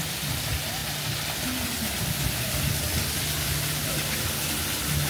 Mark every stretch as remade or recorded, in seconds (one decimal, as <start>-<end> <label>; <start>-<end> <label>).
0.0-5.1 recorded